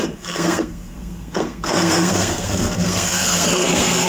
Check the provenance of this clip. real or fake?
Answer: fake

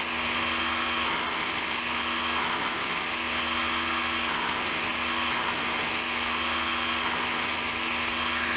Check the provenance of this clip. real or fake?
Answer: real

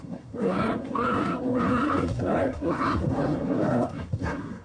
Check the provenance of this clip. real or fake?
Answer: fake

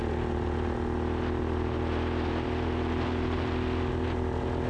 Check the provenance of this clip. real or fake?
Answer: real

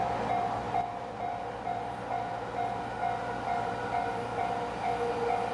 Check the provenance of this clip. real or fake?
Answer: real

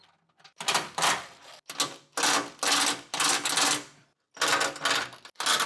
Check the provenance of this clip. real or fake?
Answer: real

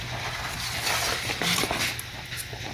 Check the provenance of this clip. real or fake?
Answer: real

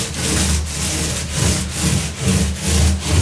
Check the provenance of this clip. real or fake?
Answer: real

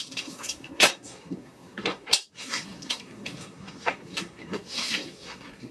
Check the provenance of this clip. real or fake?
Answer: fake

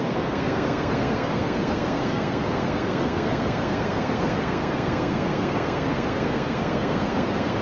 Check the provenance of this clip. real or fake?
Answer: fake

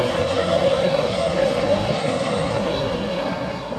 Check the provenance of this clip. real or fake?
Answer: fake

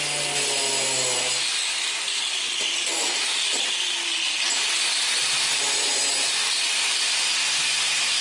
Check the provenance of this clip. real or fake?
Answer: real